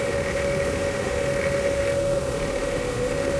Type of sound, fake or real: fake